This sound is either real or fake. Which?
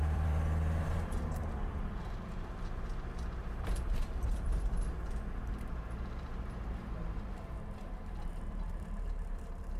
fake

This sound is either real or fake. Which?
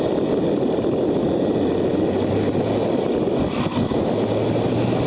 real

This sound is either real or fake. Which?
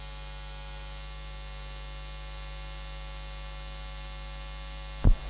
real